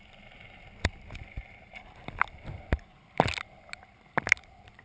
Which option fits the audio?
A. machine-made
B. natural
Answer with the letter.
B